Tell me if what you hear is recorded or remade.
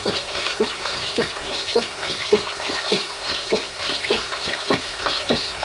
remade